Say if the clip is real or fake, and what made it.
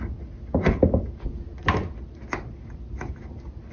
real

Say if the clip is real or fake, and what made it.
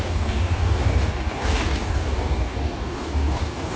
fake, codec, DAC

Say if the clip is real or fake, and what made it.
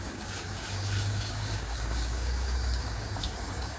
fake, codec, DAC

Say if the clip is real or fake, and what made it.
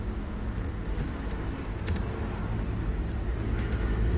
real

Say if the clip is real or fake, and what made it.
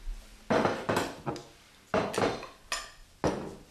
real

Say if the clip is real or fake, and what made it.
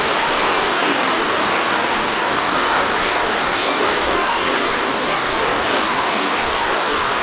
fake, codec, DAC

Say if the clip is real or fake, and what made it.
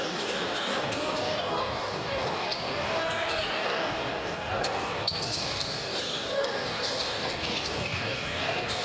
fake, codec, DAC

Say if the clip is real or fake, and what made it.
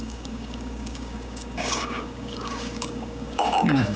fake, codec, DAC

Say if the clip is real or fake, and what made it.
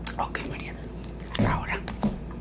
real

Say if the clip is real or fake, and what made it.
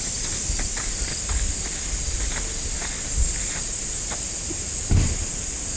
real